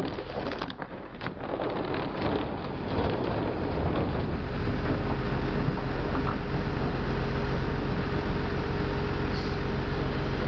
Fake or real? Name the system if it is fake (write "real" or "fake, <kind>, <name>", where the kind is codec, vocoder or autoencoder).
real